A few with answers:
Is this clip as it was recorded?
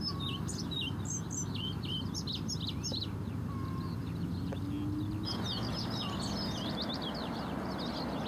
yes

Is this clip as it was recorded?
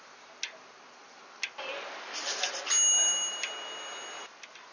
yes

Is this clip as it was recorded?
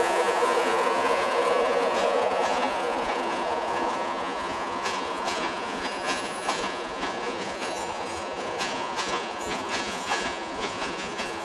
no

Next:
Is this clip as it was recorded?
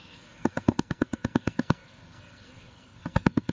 no